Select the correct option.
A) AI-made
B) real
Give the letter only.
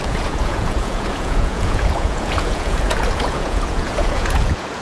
A